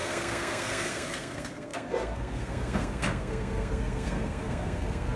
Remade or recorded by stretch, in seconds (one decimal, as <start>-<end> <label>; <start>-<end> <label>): 0.0-5.2 remade